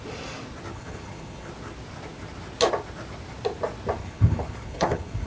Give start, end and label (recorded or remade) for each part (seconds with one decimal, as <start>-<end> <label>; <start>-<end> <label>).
0.0-0.7 recorded; 0.7-1.5 remade; 1.5-4.0 recorded; 4.0-5.3 remade